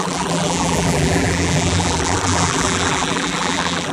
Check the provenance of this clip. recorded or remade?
remade